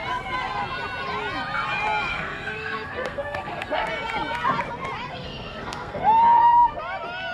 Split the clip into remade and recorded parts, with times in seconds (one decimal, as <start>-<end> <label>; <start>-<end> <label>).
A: 0.0-2.1 recorded; 2.1-3.9 remade; 3.9-5.1 recorded; 5.1-6.8 remade; 6.8-7.3 recorded